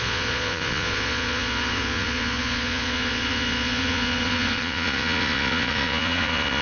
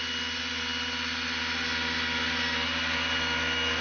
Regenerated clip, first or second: first